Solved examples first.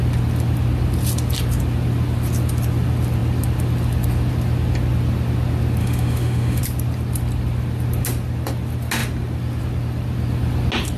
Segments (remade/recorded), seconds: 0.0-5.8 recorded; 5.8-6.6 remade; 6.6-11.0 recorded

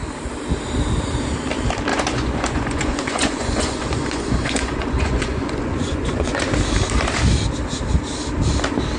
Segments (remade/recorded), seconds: 0.0-1.9 recorded; 1.9-6.4 remade; 6.4-9.0 recorded

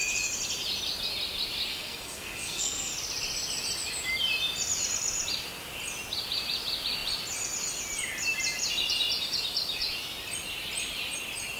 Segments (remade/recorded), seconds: 0.0-1.7 recorded; 1.7-2.9 remade; 2.9-11.6 recorded

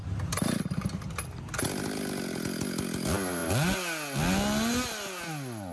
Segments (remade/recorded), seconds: 0.0-5.7 recorded

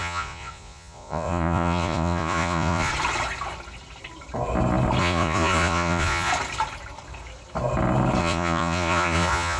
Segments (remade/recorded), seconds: 0.0-2.9 remade; 2.9-5.0 recorded; 5.0-6.3 remade; 6.3-8.2 recorded; 8.2-9.6 remade

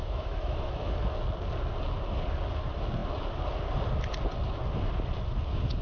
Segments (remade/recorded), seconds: 0.0-0.9 remade; 0.9-5.8 recorded